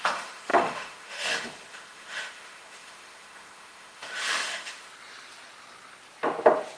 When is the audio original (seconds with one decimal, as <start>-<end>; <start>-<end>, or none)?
4.9-6.8